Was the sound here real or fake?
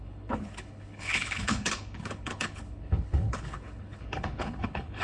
fake